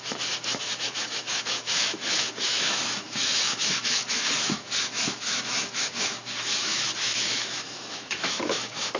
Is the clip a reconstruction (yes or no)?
yes